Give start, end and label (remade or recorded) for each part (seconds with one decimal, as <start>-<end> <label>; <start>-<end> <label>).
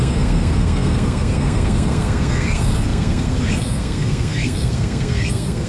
0.0-5.7 remade